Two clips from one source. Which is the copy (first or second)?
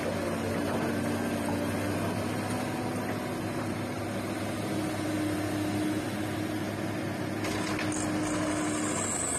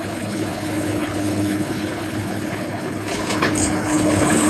second